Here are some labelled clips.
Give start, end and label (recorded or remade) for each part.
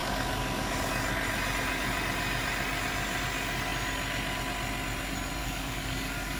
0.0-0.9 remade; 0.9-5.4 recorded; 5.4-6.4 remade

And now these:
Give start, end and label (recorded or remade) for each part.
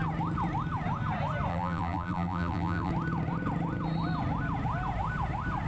0.0-1.5 recorded; 1.5-2.9 remade; 2.9-5.7 recorded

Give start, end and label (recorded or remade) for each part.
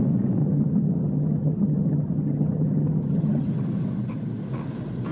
0.0-0.4 recorded; 0.4-3.5 remade; 3.5-5.1 recorded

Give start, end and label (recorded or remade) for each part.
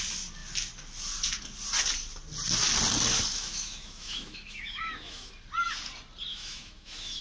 0.0-3.3 recorded; 3.3-5.3 remade; 5.3-6.3 recorded; 6.3-7.2 remade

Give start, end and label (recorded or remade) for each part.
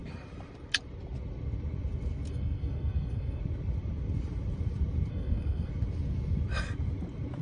0.0-2.3 recorded; 2.3-3.4 remade; 3.4-5.1 recorded; 5.1-5.7 remade; 5.7-7.4 recorded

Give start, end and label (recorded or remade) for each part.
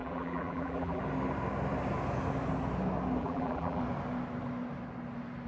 0.0-1.0 remade; 1.0-3.2 recorded; 3.2-3.8 remade; 3.8-5.5 recorded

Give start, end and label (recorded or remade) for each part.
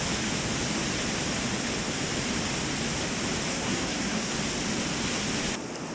0.0-3.5 recorded; 3.5-4.3 remade; 4.3-5.9 recorded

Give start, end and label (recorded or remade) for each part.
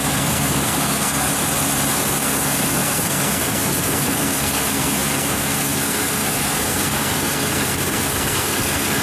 0.0-1.3 remade; 1.3-1.9 recorded; 1.9-9.0 remade